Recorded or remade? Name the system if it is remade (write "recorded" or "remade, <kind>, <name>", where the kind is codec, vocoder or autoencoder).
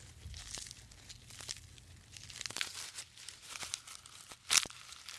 recorded